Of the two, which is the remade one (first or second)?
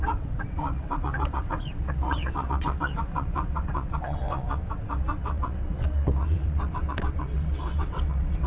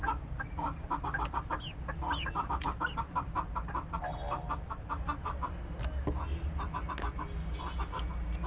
first